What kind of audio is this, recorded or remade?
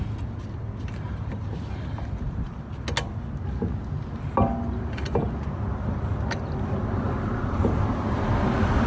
recorded